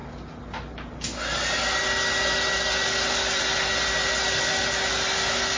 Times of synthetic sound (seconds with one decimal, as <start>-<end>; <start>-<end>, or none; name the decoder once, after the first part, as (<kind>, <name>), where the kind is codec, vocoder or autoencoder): none